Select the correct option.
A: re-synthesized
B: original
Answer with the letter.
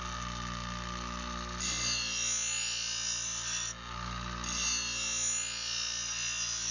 B